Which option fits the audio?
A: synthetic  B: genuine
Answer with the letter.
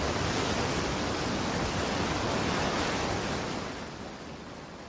B